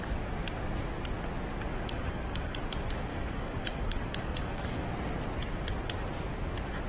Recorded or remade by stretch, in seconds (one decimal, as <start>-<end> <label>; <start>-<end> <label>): 0.0-1.7 recorded; 1.7-2.6 remade; 2.6-3.1 recorded; 3.1-4.9 remade; 4.9-6.9 recorded